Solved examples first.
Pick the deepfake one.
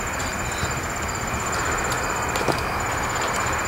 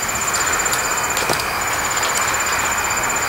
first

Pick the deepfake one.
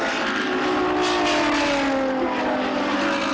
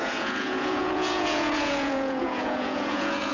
second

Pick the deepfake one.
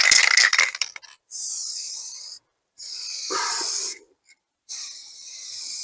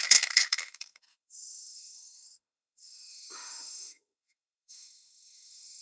second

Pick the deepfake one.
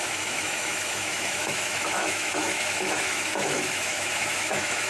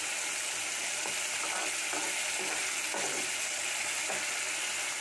first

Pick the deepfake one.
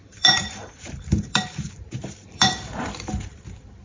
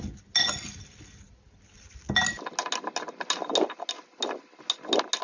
first